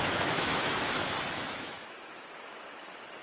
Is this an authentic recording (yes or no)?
no